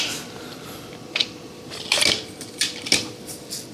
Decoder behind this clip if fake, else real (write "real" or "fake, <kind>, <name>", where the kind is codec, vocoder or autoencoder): real